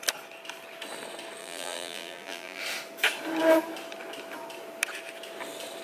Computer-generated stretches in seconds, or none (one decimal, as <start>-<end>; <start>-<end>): 1.4-2.6